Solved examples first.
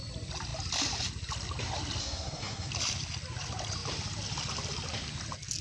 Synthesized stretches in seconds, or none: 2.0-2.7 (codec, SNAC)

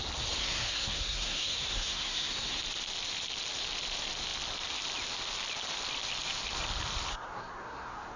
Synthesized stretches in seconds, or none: 0.4-2.6 (codec, SNAC); 7.1-8.2

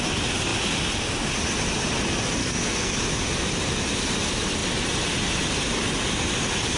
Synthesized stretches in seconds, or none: 2.4-3.0 (codec, SNAC)

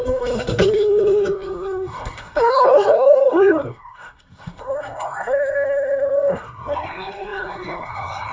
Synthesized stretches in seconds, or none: 0.0-8.3 (codec, SNAC)

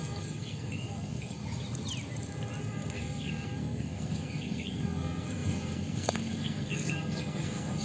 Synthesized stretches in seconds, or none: 0.0-1.4 (codec, SNAC); 2.6-7.8